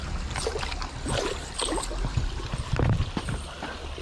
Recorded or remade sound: recorded